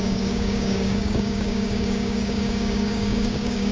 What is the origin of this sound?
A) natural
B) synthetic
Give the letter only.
B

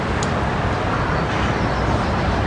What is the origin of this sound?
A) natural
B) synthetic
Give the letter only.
A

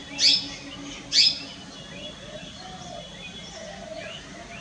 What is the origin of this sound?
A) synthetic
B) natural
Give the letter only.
B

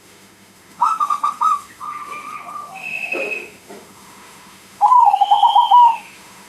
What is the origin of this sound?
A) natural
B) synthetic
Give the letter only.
B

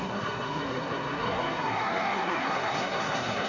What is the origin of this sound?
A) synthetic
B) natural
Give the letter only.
A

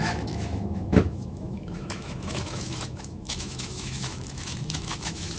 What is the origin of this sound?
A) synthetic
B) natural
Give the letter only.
A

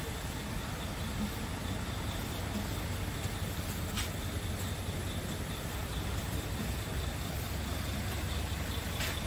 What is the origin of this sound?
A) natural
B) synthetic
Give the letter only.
A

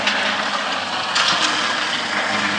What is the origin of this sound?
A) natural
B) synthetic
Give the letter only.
A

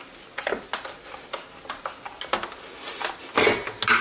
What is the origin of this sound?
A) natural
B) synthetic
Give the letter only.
A